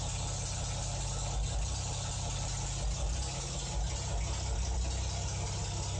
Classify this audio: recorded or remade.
recorded